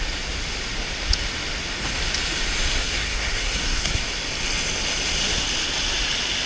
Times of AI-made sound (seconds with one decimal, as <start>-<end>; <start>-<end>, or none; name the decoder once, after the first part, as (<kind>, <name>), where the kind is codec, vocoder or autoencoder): 2.8-4.0 (codec, SNAC)